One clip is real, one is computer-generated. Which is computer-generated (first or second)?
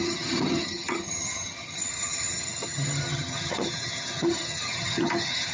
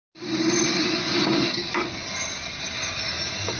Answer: first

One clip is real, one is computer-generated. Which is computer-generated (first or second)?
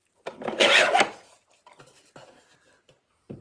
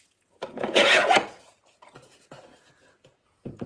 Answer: second